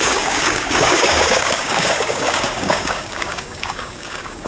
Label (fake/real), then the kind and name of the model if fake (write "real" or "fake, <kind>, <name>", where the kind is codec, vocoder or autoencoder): fake, codec, DAC